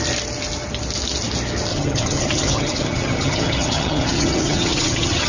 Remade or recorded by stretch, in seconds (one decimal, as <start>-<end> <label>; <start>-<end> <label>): 0.0-1.7 recorded; 1.7-5.3 remade